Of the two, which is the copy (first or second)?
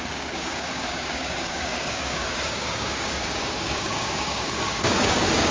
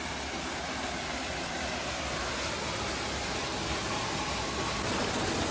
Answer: first